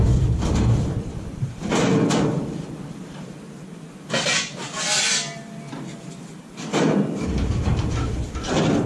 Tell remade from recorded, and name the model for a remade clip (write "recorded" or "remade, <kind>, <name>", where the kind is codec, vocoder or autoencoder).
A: remade, vocoder, BigVGAN v2